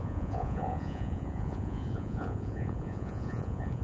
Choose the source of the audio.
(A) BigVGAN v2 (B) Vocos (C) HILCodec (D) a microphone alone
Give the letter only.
B